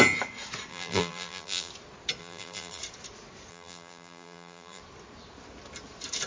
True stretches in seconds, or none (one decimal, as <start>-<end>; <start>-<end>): 0.0-0.7; 1.7-2.2; 2.8-3.5; 4.8-6.3